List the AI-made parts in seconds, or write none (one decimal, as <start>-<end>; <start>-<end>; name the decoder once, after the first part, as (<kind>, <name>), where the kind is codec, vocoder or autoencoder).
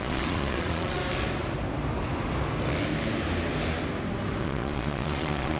0.0-1.0 (vocoder, Vocos); 4.4-5.6